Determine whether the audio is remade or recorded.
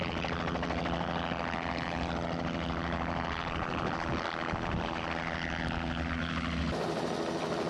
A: recorded